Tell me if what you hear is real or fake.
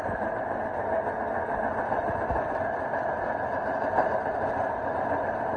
real